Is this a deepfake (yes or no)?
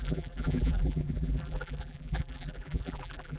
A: yes